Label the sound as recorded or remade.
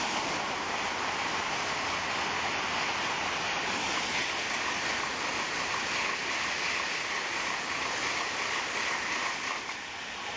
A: recorded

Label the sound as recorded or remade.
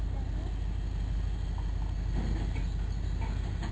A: recorded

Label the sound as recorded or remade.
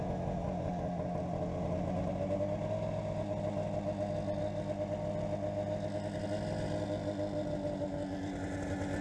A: recorded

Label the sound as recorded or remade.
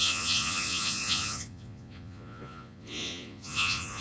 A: remade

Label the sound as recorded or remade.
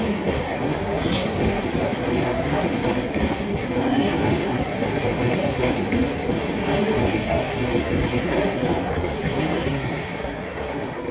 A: remade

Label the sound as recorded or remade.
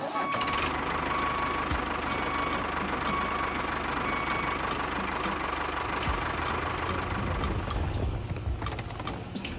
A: recorded